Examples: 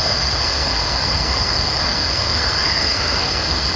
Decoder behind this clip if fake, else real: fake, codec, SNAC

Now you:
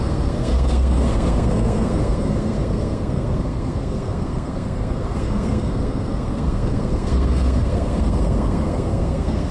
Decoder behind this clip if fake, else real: fake, codec, SNAC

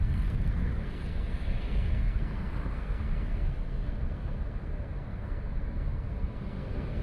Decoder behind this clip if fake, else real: fake, codec, SNAC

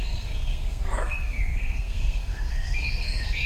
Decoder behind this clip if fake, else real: fake, codec, SNAC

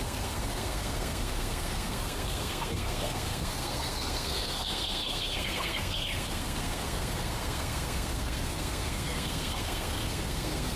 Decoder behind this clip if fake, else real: fake, codec, SNAC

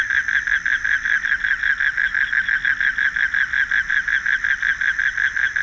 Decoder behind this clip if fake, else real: real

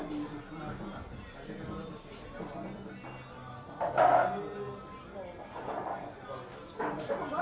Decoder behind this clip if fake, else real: real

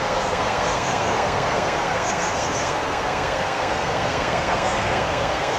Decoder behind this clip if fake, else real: fake, codec, SNAC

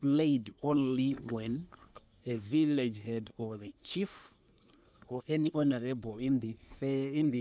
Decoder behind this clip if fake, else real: fake, codec, SNAC